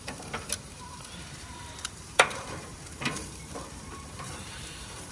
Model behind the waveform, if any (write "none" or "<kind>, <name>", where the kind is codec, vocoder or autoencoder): vocoder, BigVGAN v2